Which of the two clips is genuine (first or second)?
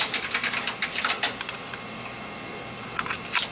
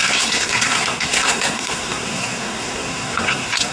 first